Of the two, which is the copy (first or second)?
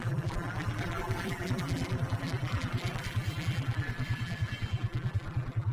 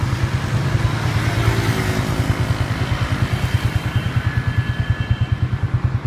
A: first